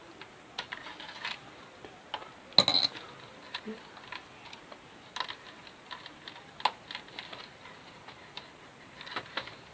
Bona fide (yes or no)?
yes